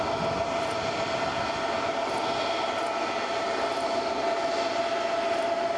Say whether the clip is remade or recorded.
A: recorded